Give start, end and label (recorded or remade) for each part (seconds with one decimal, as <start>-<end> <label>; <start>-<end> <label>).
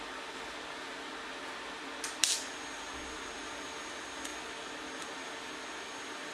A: 0.0-6.3 recorded